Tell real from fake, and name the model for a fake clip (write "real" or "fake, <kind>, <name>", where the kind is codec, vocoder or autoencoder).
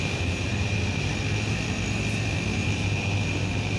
real